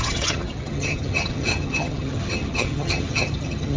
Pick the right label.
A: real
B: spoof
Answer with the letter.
B